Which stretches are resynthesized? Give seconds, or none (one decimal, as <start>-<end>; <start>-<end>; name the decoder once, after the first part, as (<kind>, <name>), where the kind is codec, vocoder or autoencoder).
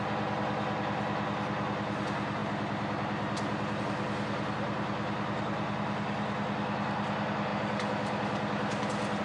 none